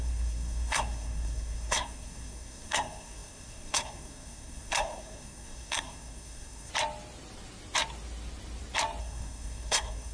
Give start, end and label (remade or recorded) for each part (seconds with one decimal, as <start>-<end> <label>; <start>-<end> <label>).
0.0-6.7 remade; 6.7-9.0 recorded; 9.0-10.1 remade